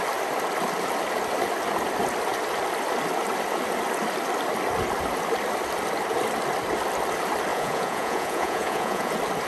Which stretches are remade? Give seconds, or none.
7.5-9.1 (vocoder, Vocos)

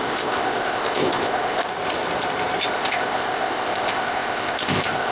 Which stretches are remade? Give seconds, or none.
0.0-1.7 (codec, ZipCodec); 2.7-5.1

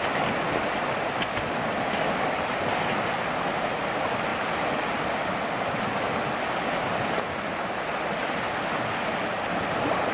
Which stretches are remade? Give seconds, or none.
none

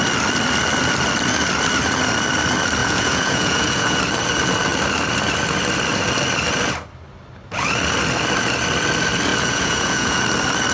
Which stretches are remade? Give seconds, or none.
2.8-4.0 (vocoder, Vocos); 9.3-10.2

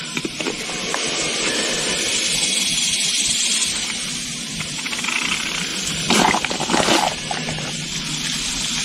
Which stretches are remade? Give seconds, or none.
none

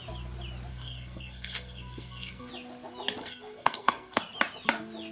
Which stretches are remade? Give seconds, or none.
0.7-2.5 (codec, SNAC); 3.2-4.2

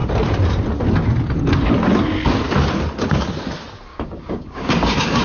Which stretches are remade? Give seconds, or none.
3.9-5.2 (codec, DAC)

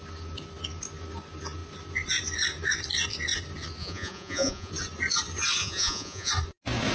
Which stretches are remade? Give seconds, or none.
3.8-4.7 (vocoder, Vocos); 5.6-6.3